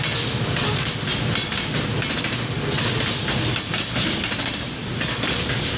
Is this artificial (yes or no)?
no